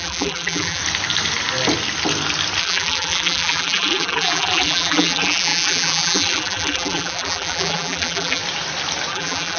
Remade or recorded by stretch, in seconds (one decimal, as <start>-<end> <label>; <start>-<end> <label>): 0.0-0.8 remade; 0.8-2.6 recorded; 2.6-8.4 remade; 8.4-9.1 recorded; 9.1-9.6 remade

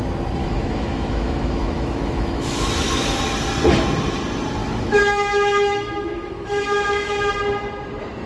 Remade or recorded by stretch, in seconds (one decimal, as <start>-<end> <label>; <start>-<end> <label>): 0.0-0.4 recorded; 0.4-3.2 remade; 3.2-4.6 recorded; 4.6-7.3 remade; 7.3-8.3 recorded

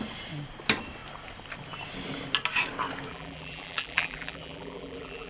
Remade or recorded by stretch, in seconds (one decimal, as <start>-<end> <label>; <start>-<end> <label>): 0.0-3.1 recorded; 3.1-5.3 remade

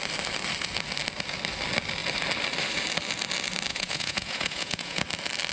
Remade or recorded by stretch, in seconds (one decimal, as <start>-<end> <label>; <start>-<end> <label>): 0.0-3.7 recorded; 3.7-5.0 remade; 5.0-5.5 recorded

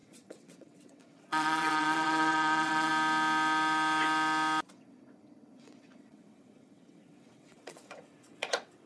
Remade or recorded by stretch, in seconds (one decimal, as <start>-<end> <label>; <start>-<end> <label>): 0.0-2.9 remade; 2.9-4.7 recorded; 4.7-8.9 remade

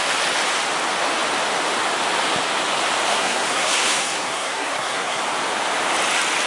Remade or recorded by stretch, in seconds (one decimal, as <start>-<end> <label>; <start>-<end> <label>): 0.0-3.1 recorded; 3.1-5.2 remade; 5.2-6.5 recorded

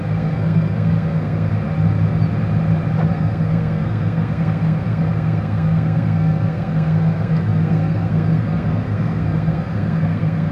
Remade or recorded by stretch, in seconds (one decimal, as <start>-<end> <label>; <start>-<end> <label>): 0.0-1.5 remade; 1.5-3.1 recorded; 3.1-10.5 remade

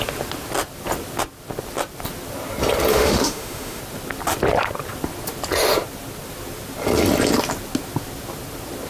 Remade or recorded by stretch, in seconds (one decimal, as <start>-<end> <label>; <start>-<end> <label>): 0.0-2.9 recorded; 2.9-3.8 remade; 3.8-8.9 recorded